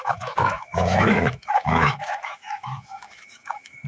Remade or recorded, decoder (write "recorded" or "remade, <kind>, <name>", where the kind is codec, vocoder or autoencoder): remade, autoencoder, DAC-VAE